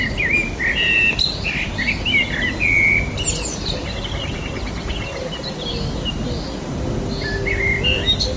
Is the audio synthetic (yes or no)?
no